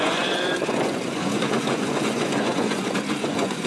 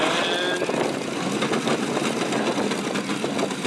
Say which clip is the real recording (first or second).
second